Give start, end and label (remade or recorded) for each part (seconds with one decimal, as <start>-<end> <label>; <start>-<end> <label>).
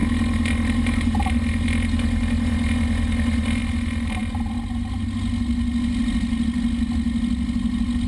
0.0-8.1 recorded